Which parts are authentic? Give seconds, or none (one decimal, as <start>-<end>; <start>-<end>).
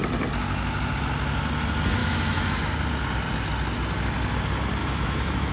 0.0-2.0; 2.6-4.8